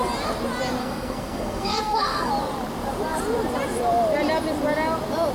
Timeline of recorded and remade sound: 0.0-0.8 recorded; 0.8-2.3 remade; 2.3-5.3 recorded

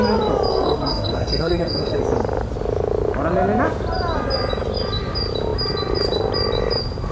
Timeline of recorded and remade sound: 0.0-0.5 recorded; 0.5-2.0 remade; 2.0-7.1 recorded

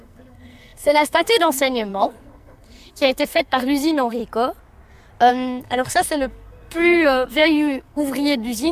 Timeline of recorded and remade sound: 0.0-4.2 remade; 4.2-5.3 recorded; 5.3-8.7 remade

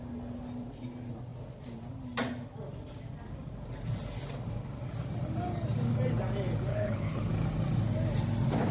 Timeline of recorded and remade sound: 0.0-6.7 recorded; 6.7-7.3 remade; 7.3-8.7 recorded

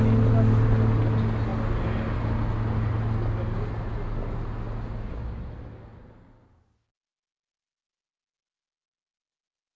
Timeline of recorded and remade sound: 0.0-9.8 recorded

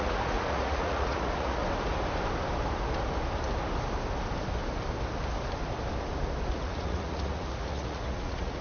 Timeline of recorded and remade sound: 0.0-1.6 remade; 1.6-6.5 recorded; 6.5-8.6 remade

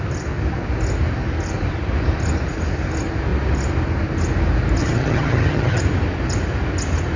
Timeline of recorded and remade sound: 0.0-4.8 recorded; 4.8-5.8 remade; 5.8-7.2 recorded